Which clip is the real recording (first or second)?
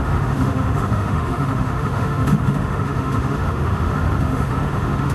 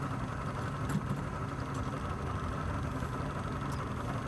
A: second